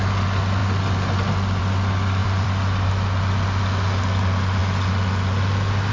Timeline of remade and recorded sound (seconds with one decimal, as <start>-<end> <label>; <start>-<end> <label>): 0.0-2.2 recorded; 2.2-2.9 remade; 2.9-5.9 recorded